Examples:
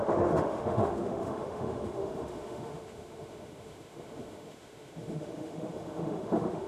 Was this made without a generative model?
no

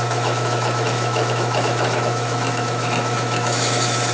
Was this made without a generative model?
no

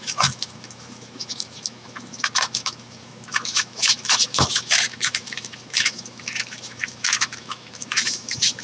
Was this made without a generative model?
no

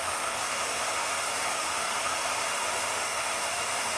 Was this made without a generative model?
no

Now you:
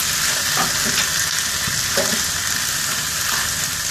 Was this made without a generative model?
yes